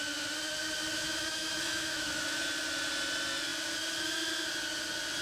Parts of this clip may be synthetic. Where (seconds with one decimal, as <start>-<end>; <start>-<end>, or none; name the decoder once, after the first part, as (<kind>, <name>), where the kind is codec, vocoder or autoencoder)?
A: 0.9-2.4 (autoencoder, DAC-VAE)